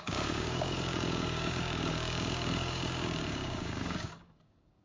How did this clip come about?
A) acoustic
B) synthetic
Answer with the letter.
B